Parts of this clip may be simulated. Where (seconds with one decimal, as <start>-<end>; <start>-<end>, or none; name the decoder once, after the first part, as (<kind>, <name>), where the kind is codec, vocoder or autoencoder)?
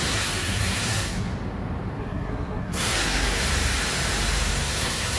0.0-1.3 (codec, SNAC); 2.0-3.4; 4.5-5.2